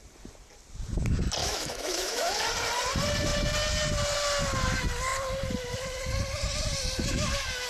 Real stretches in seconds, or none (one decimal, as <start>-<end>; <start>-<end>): 0.0-1.4; 2.4-7.7